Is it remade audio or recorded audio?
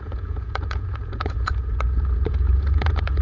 remade